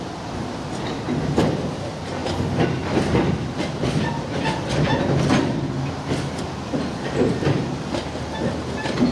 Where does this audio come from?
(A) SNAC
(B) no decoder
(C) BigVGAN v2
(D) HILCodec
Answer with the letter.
B